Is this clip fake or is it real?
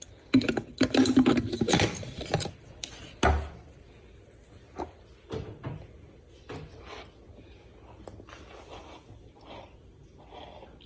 real